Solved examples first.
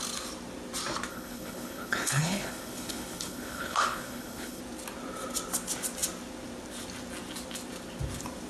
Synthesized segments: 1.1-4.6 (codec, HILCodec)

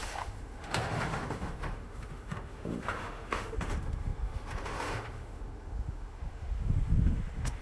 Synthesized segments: 0.0-7.6 (autoencoder, DAC-VAE)

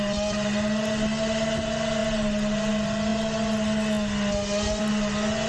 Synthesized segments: none

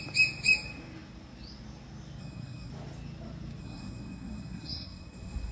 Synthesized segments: 2.2-2.7 (codec, SNAC); 3.6-5.5

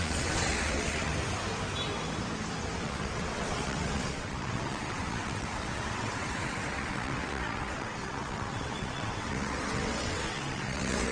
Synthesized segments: 0.0-1.1 (vocoder, WaveNeXt); 2.8-11.1